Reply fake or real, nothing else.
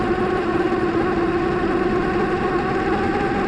real